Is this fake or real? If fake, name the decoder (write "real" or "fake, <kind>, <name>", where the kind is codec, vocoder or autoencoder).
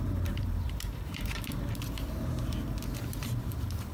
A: fake, vocoder, BigVGAN v2